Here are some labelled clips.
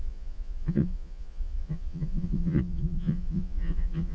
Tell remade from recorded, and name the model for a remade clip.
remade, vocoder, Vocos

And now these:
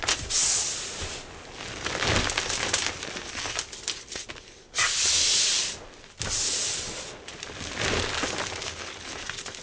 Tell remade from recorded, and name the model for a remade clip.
recorded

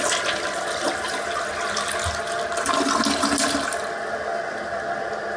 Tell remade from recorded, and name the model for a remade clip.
recorded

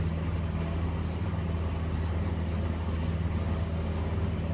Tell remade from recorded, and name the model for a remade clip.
recorded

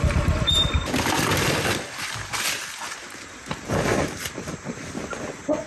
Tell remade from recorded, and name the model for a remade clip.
recorded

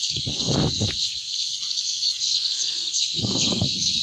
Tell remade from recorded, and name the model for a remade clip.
remade, codec, SNAC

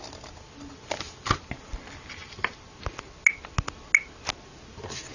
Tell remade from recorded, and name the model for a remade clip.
recorded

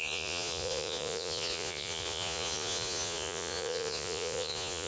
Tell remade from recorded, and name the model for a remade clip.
remade, vocoder, Vocos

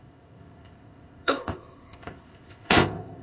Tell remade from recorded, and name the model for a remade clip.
remade, codec, ZipCodec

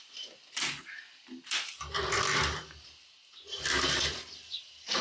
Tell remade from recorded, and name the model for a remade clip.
remade, vocoder, BigVGAN v2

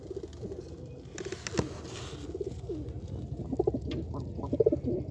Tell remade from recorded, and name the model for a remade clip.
recorded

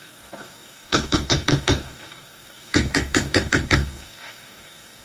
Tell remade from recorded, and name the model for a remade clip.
remade, codec, DAC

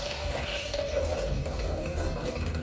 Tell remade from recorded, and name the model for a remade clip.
remade, codec, DAC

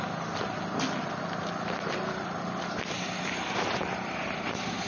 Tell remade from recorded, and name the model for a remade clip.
recorded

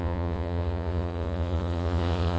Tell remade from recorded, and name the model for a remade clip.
remade, vocoder, Vocos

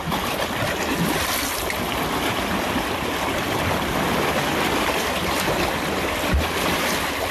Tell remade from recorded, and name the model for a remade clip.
recorded